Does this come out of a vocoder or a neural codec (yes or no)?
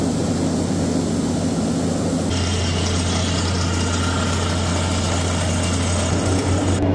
no